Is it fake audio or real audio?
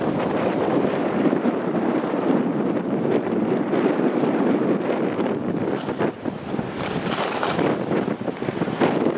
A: fake